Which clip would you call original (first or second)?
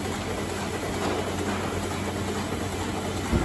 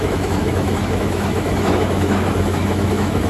first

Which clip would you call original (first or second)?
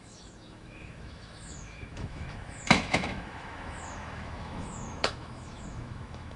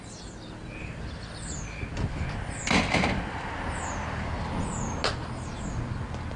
second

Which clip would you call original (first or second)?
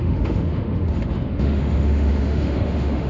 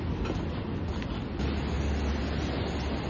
second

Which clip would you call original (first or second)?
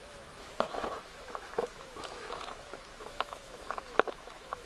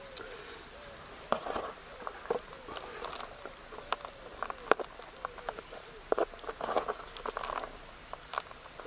second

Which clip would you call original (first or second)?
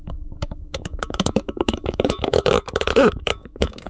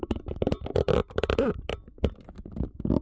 second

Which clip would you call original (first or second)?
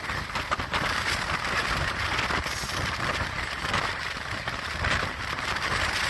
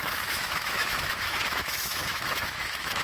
first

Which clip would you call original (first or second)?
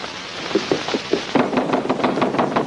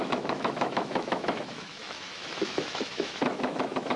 first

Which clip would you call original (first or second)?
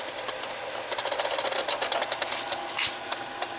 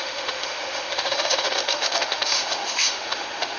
first